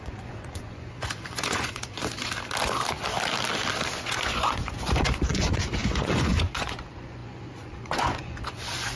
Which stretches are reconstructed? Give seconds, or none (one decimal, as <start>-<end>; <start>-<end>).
0.0-2.0; 4.0-9.0